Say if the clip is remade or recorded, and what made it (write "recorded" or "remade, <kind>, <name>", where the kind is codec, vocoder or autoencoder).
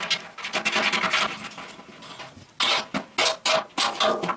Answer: recorded